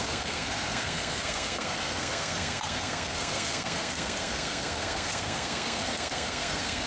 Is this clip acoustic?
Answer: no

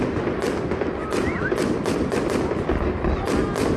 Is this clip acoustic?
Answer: yes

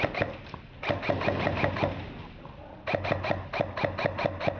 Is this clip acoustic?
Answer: yes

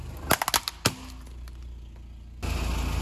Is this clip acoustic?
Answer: yes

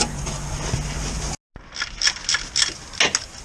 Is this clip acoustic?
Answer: yes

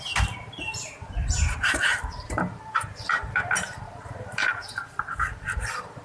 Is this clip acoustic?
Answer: no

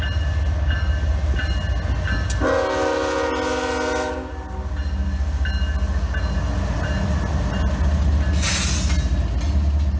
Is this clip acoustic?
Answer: yes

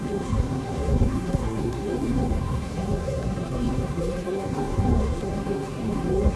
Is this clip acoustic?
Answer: no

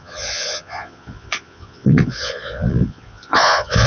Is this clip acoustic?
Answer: no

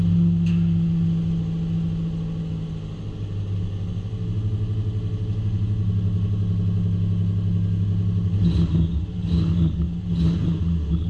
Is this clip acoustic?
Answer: yes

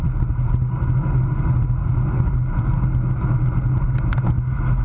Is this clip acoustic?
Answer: yes